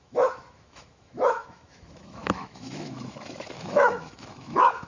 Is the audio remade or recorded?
remade